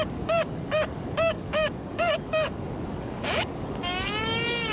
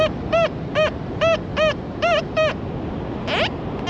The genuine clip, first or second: second